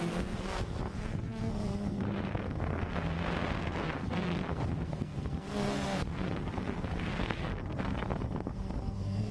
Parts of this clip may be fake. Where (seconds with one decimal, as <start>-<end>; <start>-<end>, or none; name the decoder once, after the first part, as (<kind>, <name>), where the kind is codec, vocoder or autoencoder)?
0.0-9.3 (codec, SNAC)